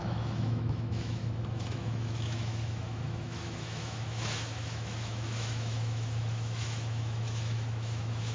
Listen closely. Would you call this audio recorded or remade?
remade